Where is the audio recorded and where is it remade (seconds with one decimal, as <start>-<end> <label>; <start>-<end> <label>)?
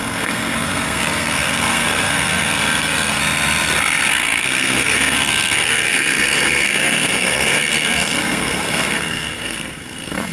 0.0-3.2 remade; 3.2-4.1 recorded; 4.1-10.3 remade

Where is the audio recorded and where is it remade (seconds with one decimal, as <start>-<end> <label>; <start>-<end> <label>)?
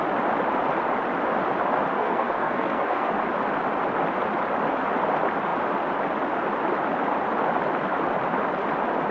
0.0-1.9 recorded; 1.9-3.1 remade; 3.1-9.1 recorded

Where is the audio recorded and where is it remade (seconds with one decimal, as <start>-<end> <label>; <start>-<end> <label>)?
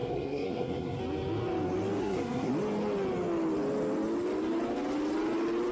0.0-1.0 remade; 1.0-2.0 recorded; 2.0-2.5 remade; 2.5-5.7 recorded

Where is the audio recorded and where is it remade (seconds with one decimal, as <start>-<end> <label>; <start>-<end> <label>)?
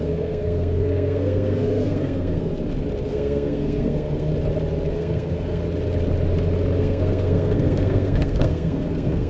0.0-2.5 remade; 2.5-3.1 recorded; 3.1-4.3 remade; 4.3-4.9 recorded; 4.9-5.6 remade; 5.6-6.8 recorded; 6.8-9.3 remade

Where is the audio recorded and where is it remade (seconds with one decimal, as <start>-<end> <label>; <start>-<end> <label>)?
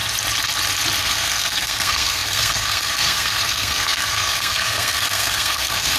0.0-1.0 recorded; 1.0-6.0 remade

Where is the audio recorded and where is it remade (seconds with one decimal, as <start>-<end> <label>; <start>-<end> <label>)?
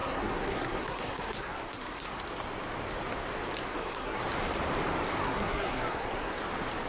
0.0-2.1 remade; 2.1-3.7 recorded; 3.7-4.2 remade; 4.2-5.2 recorded; 5.2-6.4 remade; 6.4-6.9 recorded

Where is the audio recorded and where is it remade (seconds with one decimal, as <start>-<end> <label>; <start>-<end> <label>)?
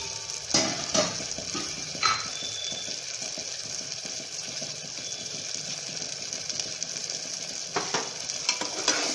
0.0-9.1 recorded